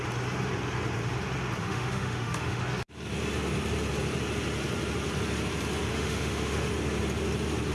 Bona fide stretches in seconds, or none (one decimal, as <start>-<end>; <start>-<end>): 0.0-1.6; 2.6-5.9; 6.7-7.7